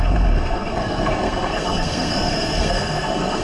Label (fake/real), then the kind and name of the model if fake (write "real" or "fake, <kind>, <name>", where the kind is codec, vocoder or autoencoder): fake, codec, SNAC